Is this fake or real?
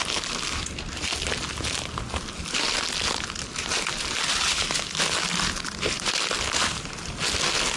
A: real